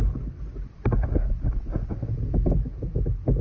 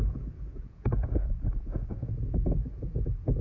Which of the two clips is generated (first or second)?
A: second